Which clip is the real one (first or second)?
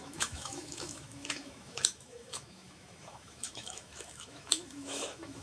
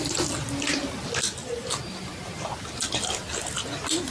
second